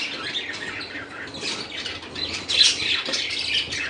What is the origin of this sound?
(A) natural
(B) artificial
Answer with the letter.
A